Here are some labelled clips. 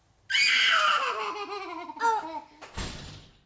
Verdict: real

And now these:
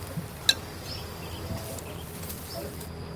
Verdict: real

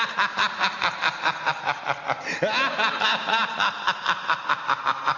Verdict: real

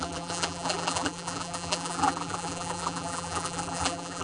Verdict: fake